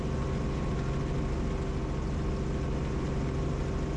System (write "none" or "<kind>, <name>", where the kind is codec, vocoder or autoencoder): none